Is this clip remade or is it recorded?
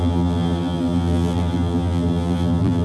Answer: remade